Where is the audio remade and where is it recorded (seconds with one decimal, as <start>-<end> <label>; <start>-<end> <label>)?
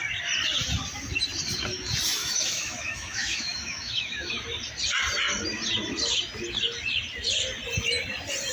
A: 0.0-2.2 recorded; 2.2-4.3 remade; 4.3-8.5 recorded